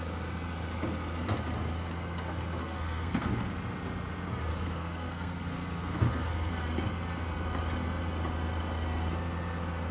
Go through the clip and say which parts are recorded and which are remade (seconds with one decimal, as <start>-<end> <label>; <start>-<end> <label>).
0.0-2.6 recorded; 2.6-3.5 remade; 3.5-4.5 recorded; 4.5-6.5 remade; 6.5-9.9 recorded